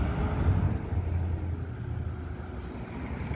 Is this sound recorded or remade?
recorded